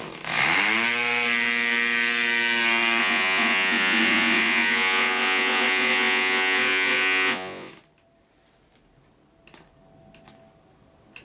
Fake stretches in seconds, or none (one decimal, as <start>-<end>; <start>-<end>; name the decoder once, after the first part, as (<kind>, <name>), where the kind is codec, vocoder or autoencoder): 3.0-7.7 (vocoder, Vocos)